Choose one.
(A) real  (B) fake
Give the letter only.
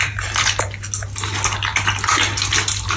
A